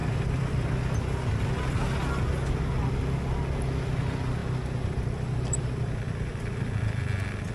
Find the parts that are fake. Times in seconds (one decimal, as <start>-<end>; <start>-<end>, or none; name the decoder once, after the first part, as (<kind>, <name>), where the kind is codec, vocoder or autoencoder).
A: 0.0-0.7 (vocoder, BigVGAN v2); 4.4-7.5